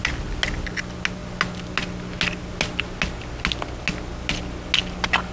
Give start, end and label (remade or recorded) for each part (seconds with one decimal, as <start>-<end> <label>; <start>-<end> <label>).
0.0-5.3 recorded